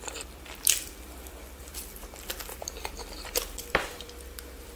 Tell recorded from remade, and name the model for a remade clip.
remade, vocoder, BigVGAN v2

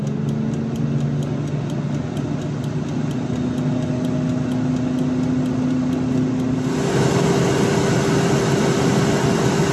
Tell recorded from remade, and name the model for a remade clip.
recorded